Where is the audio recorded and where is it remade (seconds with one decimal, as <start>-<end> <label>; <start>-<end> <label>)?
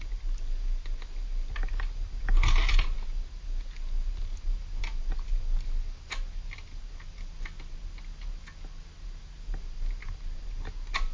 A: 0.0-11.1 recorded